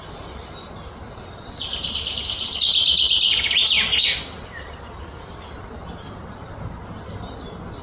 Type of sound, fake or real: real